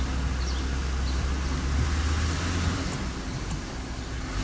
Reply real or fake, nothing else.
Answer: real